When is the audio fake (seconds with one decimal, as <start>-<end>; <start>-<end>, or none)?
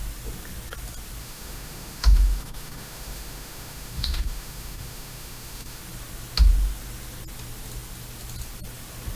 1.2-5.8